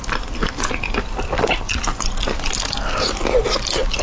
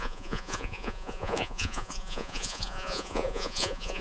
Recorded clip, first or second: first